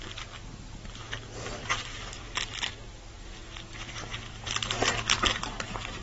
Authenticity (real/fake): fake